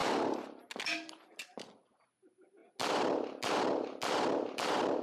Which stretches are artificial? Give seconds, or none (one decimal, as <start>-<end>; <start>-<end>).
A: none